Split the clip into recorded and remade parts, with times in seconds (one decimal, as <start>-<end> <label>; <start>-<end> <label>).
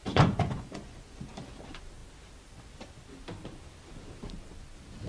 0.0-1.2 remade; 1.2-5.1 recorded